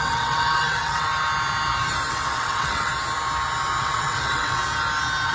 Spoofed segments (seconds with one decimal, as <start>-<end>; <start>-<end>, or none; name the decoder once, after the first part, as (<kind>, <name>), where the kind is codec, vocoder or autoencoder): 0.0-1.1 (vocoder, WaveNeXt); 2.1-2.9; 3.8-4.6